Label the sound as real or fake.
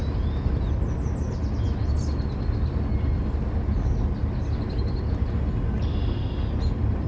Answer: real